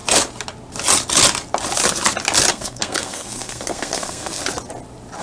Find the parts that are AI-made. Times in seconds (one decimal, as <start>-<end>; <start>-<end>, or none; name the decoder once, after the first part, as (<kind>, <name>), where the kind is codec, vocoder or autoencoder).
2.5-4.4 (codec, SNAC)